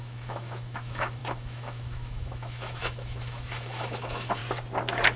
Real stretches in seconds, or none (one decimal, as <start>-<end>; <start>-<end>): 4.4-5.2

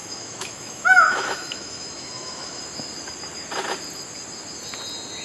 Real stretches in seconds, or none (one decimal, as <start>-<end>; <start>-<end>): 2.6-5.2

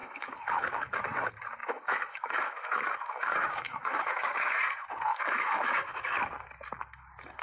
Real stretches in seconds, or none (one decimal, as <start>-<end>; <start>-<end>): 1.0-1.6; 4.6-5.1; 6.3-7.4

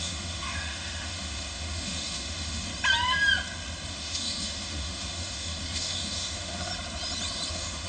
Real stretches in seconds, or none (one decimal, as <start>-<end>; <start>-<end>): 2.7-3.9; 6.7-7.5